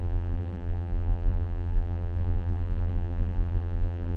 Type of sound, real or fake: fake